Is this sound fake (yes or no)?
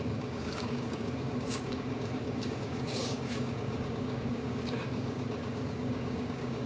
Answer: yes